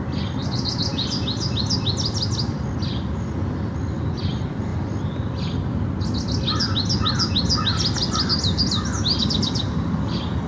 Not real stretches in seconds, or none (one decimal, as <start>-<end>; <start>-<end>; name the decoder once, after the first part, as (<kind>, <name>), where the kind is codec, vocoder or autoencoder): none